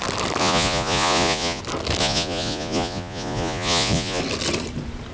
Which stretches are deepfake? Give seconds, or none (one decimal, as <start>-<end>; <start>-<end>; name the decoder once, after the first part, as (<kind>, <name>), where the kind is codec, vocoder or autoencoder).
0.4-1.6 (vocoder, Vocos); 2.0-4.2